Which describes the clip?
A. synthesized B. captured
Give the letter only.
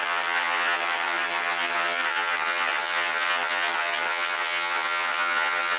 A